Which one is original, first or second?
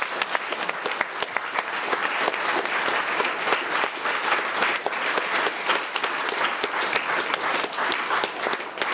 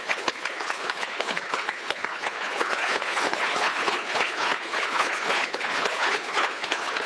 first